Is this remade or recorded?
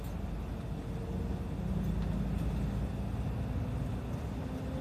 recorded